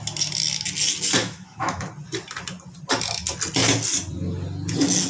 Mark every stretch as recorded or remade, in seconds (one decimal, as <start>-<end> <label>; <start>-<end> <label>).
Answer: 0.0-1.2 recorded; 1.2-1.9 remade; 1.9-5.1 recorded

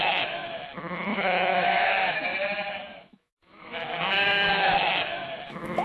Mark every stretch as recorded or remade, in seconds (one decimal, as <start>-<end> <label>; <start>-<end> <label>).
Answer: 0.0-2.3 remade; 2.3-3.0 recorded; 3.0-5.8 remade

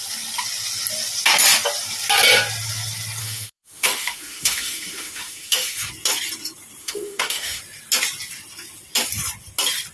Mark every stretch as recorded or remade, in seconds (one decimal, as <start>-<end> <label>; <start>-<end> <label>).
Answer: 0.0-3.2 recorded; 3.2-5.9 remade; 5.9-6.8 recorded; 6.8-7.6 remade; 7.6-9.9 recorded

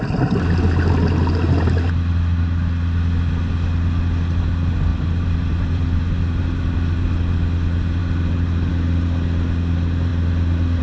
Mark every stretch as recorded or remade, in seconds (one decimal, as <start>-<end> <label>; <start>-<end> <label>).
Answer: 0.0-4.9 recorded; 4.9-6.6 remade; 6.6-8.0 recorded; 8.0-8.7 remade; 8.7-10.8 recorded

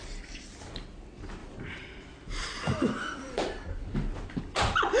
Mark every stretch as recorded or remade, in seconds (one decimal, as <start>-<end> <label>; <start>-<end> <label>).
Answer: 0.0-1.4 recorded; 1.4-4.4 remade; 4.4-5.0 recorded